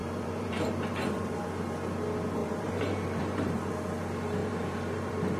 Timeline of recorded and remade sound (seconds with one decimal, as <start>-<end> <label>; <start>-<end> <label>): 0.0-1.4 remade; 1.4-2.4 recorded; 2.4-3.7 remade; 3.7-4.4 recorded; 4.4-5.4 remade